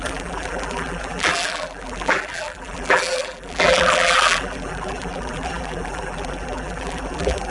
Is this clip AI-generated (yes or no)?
yes